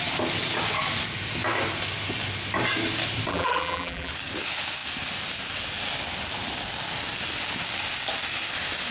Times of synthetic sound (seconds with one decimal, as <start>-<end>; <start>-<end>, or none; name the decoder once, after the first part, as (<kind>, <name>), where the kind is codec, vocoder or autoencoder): 3.3-4.1 (vocoder, BigVGAN v2)